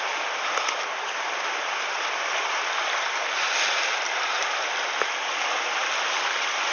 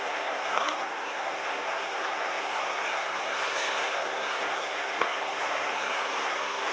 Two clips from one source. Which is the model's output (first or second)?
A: second